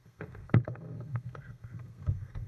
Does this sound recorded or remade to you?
remade